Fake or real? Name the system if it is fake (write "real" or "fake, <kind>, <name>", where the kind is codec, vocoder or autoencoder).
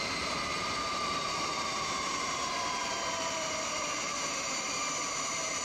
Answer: fake, vocoder, BigVGAN v2